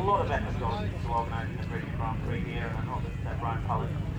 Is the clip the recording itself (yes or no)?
yes